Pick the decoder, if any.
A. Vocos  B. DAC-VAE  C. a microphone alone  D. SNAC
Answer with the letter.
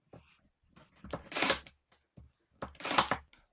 C